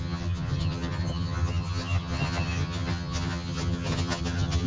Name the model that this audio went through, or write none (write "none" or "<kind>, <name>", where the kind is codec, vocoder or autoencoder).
vocoder, HiFi-GAN